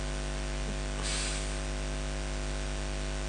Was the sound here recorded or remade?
recorded